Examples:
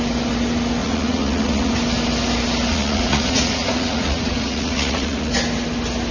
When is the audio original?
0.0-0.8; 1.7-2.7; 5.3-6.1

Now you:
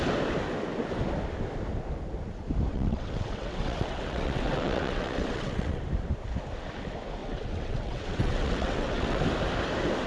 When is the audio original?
0.0-2.7; 5.8-7.2; 9.2-10.1